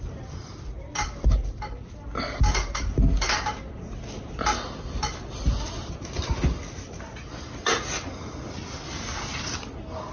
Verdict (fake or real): real